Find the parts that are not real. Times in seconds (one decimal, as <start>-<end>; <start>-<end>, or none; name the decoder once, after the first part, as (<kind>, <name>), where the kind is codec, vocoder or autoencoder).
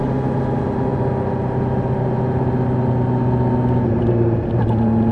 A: none